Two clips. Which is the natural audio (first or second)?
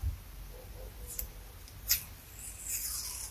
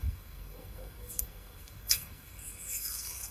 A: first